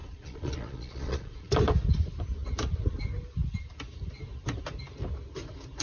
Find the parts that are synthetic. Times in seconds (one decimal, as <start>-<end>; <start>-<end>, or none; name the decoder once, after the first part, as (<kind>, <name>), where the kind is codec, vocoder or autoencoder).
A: 0.0-1.5 (vocoder, Vocos)